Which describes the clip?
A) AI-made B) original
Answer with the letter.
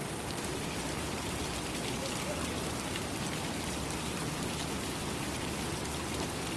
B